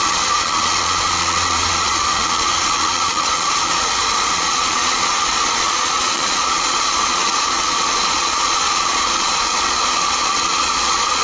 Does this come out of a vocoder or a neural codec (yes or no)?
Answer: yes